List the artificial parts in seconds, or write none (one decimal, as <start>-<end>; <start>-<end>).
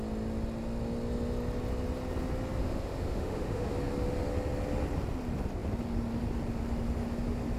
2.6-3.7